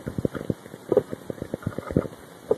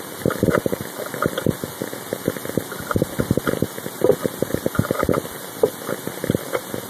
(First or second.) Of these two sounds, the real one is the second